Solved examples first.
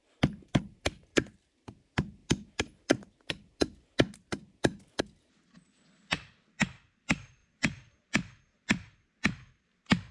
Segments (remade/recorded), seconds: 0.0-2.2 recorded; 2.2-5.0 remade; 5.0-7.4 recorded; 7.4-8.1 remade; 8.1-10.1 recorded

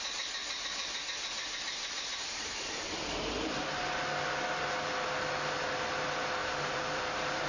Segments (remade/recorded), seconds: 0.0-0.4 recorded; 0.4-3.9 remade; 3.9-6.4 recorded; 6.4-7.5 remade

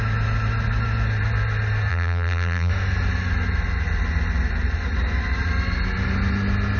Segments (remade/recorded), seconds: 0.0-1.9 recorded; 1.9-2.7 remade; 2.7-6.8 recorded